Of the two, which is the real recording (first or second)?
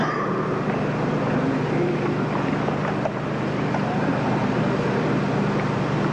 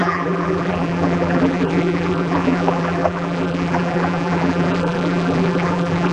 first